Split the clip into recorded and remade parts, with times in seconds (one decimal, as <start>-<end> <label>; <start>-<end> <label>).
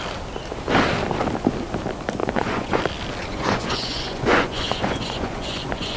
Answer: 0.0-2.2 recorded; 2.2-2.8 remade; 2.8-3.3 recorded; 3.3-6.0 remade